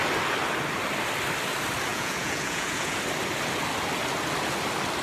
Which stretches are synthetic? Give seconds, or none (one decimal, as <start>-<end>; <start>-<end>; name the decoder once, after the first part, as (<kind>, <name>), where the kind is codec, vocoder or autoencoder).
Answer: 1.9-3.0 (vocoder, Vocos)